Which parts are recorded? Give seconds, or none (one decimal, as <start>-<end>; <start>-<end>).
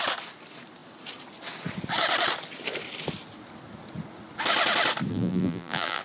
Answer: 0.0-5.1